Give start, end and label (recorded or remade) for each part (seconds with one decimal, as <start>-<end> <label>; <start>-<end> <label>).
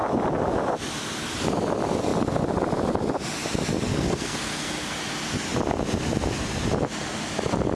0.0-3.9 recorded; 3.9-5.0 remade; 5.0-7.8 recorded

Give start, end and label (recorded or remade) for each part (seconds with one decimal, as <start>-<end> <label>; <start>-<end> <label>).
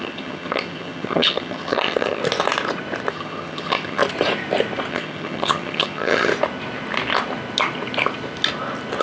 0.0-2.2 remade; 2.2-3.1 recorded; 3.1-4.0 remade; 4.0-4.9 recorded; 4.9-6.3 remade; 6.3-9.0 recorded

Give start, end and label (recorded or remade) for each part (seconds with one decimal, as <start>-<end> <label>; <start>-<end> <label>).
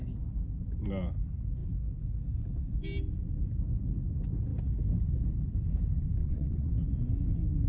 0.0-6.2 recorded; 6.2-6.7 remade; 6.7-7.7 recorded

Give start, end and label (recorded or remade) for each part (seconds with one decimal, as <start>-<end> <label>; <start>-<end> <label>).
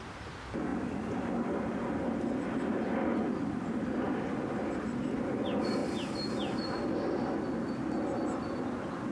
0.0-9.1 recorded